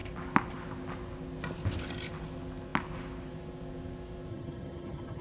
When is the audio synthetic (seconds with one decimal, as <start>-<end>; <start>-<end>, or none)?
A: 4.3-5.2